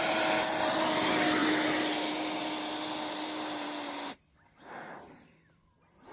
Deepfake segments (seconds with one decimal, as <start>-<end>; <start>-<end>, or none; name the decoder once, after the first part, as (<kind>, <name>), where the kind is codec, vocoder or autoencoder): none